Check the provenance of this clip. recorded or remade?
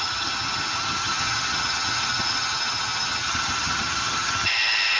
remade